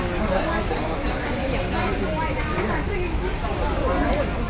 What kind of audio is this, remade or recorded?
recorded